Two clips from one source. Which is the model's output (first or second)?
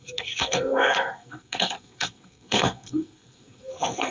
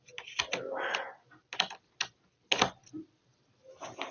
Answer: first